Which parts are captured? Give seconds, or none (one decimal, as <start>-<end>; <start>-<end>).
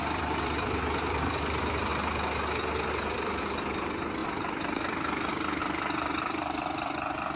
1.9-2.9; 4.2-5.6